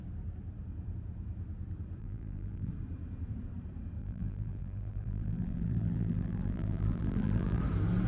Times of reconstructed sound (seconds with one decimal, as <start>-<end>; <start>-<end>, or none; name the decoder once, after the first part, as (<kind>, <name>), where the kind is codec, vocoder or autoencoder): 2.0-2.7 (vocoder, BigVGAN v2); 4.0-7.6